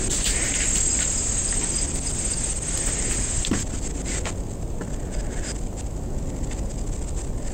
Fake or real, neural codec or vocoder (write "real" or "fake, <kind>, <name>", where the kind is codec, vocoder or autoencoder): real